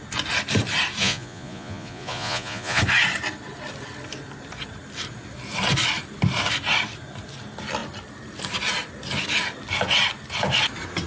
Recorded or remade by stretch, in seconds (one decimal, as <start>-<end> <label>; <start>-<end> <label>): 0.0-1.0 recorded; 1.0-2.8 remade; 2.8-11.1 recorded